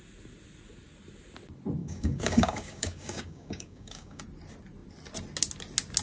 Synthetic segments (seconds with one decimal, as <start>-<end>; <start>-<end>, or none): 1.8-4.2